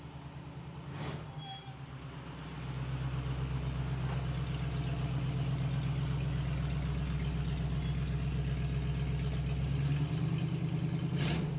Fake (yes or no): no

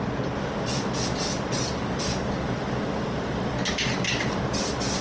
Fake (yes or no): no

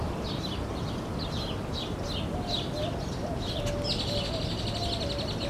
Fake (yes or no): no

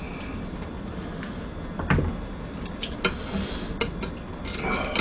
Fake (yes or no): no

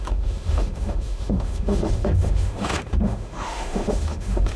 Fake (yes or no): yes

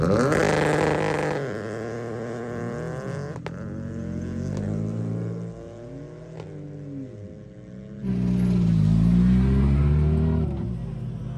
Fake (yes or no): no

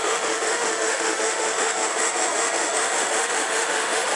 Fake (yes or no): yes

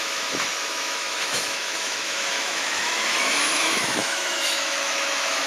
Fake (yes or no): yes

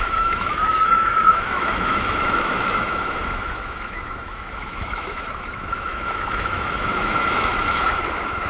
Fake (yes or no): yes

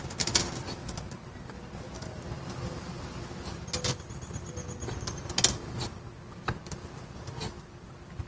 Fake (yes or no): no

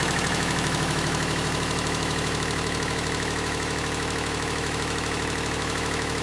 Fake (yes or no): yes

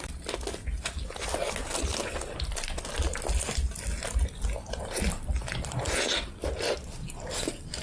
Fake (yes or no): no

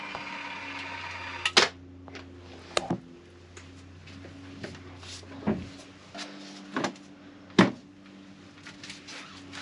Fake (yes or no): no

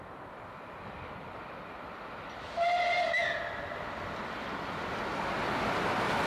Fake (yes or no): no